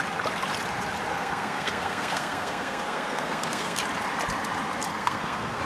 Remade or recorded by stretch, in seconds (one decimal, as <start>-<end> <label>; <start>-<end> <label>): 0.0-1.1 recorded; 1.1-3.8 remade; 3.8-4.9 recorded; 4.9-5.6 remade